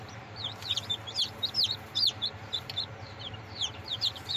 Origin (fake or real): fake